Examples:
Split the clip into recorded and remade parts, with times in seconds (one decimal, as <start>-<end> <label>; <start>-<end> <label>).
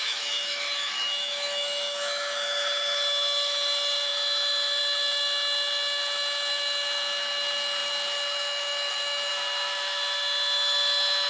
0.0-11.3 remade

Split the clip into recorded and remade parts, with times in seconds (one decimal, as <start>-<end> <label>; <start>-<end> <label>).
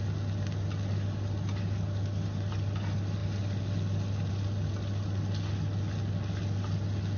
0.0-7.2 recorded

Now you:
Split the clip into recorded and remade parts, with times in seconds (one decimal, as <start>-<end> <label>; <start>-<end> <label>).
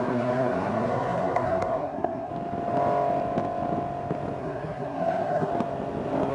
0.0-2.3 remade; 2.3-4.4 recorded; 4.4-5.5 remade; 5.5-6.3 recorded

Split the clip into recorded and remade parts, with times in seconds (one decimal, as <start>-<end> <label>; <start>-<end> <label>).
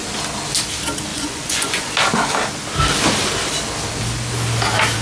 0.0-1.1 recorded; 1.1-1.9 remade; 1.9-5.0 recorded